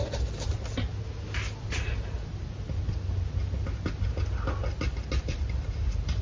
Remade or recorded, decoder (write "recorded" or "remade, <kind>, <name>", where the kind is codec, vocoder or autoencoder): recorded